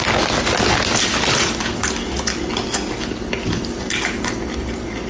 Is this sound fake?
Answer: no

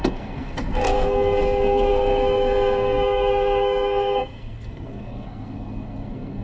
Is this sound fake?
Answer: yes